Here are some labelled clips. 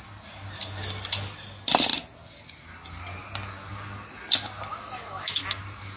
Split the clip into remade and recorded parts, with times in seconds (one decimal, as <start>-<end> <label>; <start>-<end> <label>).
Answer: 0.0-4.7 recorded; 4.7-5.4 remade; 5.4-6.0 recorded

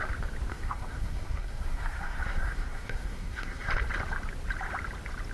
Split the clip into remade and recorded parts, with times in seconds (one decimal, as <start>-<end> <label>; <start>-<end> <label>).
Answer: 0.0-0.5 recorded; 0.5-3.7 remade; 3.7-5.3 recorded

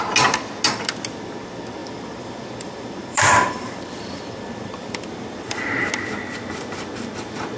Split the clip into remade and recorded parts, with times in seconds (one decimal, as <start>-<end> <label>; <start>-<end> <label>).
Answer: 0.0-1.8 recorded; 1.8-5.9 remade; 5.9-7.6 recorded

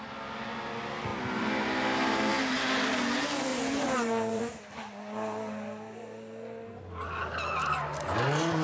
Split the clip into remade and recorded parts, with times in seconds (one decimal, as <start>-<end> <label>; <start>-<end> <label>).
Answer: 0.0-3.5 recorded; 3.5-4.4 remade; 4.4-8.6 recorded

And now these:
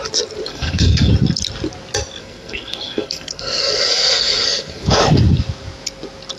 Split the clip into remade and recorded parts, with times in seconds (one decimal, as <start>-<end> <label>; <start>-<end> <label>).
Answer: 0.0-0.5 recorded; 0.5-1.1 remade; 1.1-2.2 recorded; 2.2-5.0 remade; 5.0-6.4 recorded

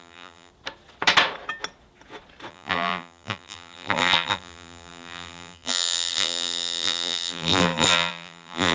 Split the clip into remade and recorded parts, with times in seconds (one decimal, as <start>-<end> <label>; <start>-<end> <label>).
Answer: 0.0-0.5 remade; 0.5-2.5 recorded; 2.5-8.7 remade